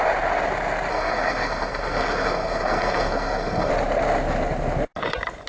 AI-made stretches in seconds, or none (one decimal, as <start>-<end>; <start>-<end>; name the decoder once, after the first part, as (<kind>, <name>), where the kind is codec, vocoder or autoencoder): 0.9-3.7 (codec, SNAC)